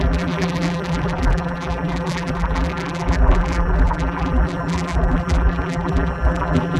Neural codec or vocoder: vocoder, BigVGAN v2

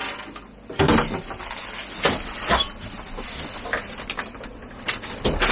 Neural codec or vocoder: none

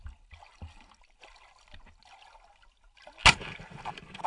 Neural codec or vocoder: none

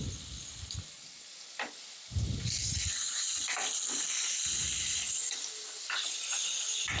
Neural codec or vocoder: none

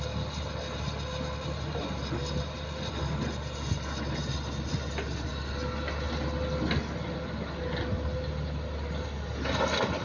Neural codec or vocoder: none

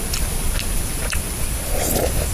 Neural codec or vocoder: none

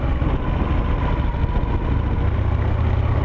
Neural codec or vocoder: none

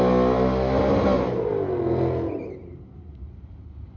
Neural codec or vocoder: none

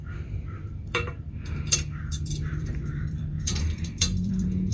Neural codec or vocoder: vocoder, BigVGAN v2